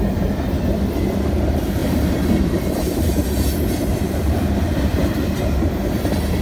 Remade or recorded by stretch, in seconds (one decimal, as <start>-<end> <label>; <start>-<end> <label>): 0.0-1.8 recorded; 1.8-5.6 remade; 5.6-6.4 recorded